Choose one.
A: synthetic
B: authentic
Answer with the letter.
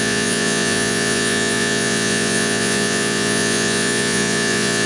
A